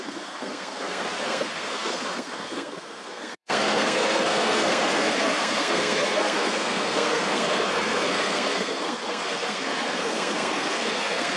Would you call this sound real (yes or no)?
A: no